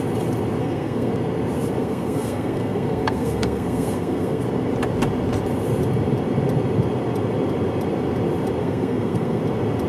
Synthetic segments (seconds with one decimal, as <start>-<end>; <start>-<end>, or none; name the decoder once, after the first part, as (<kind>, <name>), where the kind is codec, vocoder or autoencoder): 0.6-1.1 (codec, SNAC); 1.8-4.4; 8.6-9.4